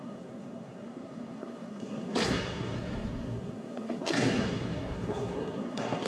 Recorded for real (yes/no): no